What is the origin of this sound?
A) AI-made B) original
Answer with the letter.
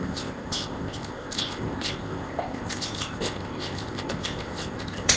A